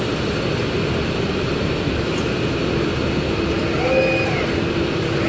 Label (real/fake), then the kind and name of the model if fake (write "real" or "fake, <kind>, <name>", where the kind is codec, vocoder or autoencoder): real